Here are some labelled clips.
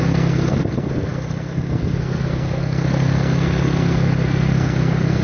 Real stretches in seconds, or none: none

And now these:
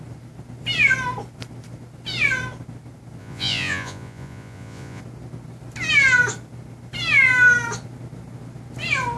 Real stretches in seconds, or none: 0.0-3.2; 5.0-9.2

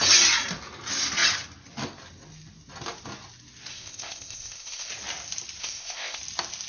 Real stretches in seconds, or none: 0.0-3.7; 4.9-5.6; 6.2-6.7

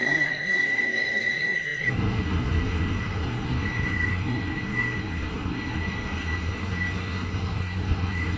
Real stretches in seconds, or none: none

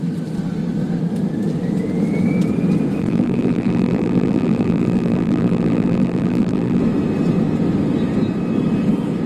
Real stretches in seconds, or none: 0.0-3.0; 6.8-9.3

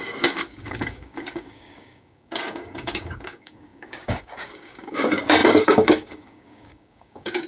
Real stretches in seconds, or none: none

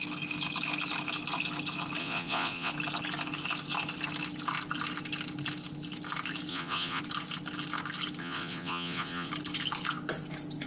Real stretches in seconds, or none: 0.0-2.0; 2.7-6.5; 7.0-8.2; 9.3-10.7

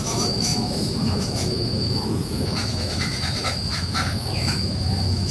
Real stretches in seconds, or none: none